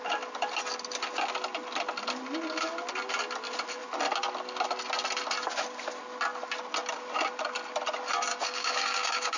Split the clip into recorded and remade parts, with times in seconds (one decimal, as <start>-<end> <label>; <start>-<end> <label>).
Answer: 0.0-8.3 recorded; 8.3-9.4 remade